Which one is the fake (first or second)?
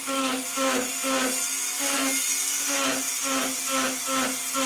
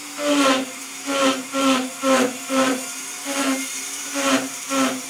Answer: second